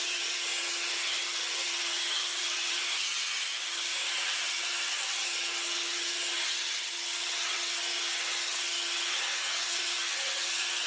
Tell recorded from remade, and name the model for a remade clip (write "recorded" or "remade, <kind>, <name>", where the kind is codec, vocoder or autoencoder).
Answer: remade, vocoder, HiFi-GAN